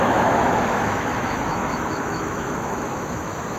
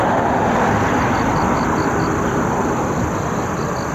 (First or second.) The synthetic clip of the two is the first